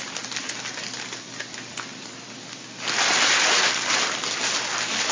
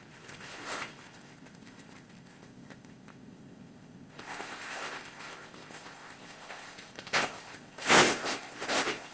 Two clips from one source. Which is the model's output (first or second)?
second